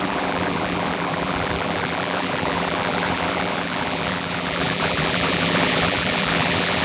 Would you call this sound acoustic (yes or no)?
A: no